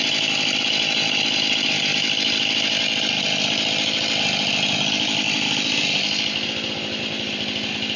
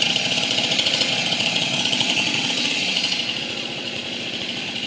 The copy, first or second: second